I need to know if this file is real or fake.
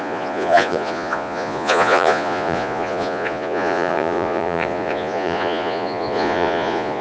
fake